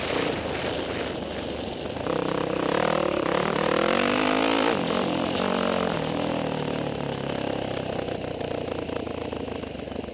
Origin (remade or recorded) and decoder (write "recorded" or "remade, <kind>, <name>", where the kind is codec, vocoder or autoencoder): recorded